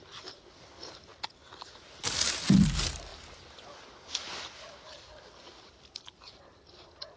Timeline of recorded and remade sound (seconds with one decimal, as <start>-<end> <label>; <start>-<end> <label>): 0.0-1.1 remade; 1.1-2.4 recorded; 2.4-3.1 remade; 3.1-5.8 recorded; 5.8-7.2 remade